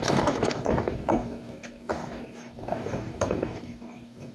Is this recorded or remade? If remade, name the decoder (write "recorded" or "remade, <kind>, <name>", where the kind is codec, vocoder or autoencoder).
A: remade, codec, DAC